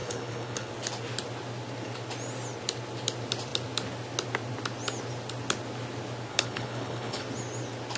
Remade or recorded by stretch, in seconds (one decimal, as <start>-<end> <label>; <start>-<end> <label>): 0.0-0.7 remade; 0.7-6.3 recorded; 6.3-7.2 remade; 7.2-8.0 recorded